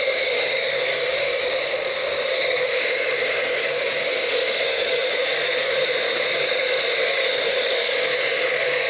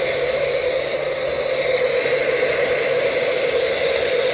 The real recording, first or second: second